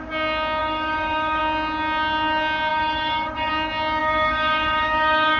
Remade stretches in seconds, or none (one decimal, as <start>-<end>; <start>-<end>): 0.6-1.4; 2.7-3.5; 4.0-5.4